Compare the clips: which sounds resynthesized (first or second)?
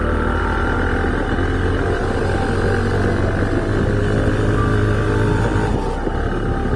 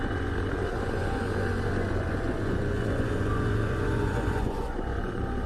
second